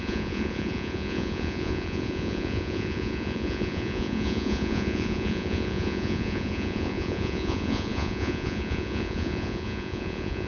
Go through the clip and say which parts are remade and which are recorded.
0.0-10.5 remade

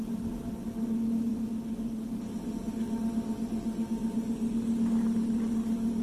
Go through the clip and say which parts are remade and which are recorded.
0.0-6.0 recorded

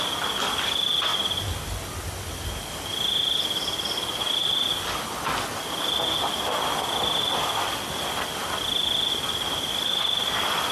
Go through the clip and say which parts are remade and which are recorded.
0.0-1.1 remade; 1.1-2.7 recorded; 2.7-4.4 remade; 4.4-7.7 recorded; 7.7-10.7 remade